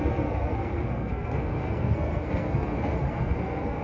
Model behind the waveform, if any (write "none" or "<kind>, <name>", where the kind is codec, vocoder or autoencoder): codec, SNAC